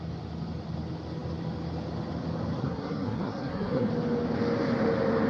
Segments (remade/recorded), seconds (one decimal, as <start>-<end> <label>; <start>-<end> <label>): 0.0-2.6 recorded; 2.6-3.9 remade; 3.9-5.3 recorded